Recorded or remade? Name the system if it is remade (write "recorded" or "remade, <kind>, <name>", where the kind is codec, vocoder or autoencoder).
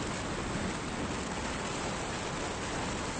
recorded